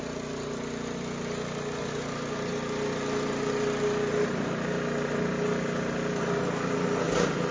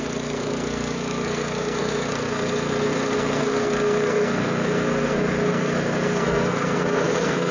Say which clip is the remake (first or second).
second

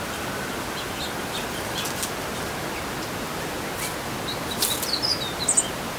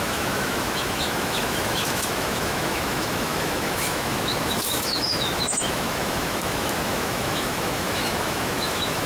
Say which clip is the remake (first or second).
second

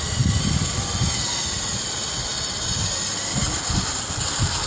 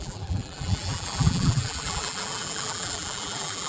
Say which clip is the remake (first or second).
second